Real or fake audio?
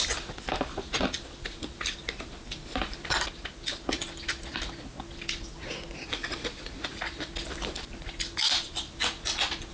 real